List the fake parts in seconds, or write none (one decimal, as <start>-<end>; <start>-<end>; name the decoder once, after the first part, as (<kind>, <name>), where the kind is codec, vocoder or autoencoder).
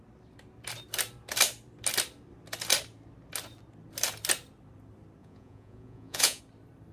5.2-6.4 (vocoder, Vocos)